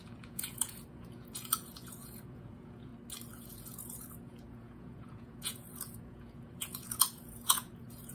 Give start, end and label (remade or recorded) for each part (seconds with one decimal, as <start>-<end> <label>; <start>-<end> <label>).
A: 0.0-2.9 remade; 2.9-3.4 recorded; 3.4-8.1 remade